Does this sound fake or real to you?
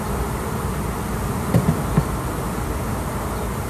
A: real